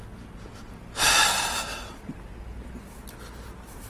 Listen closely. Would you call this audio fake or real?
real